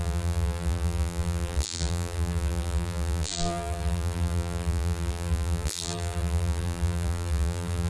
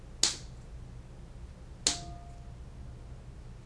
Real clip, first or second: second